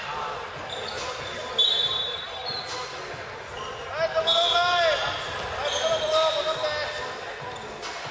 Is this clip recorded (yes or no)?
yes